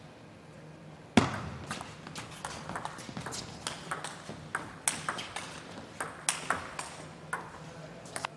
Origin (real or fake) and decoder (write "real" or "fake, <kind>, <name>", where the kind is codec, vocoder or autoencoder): real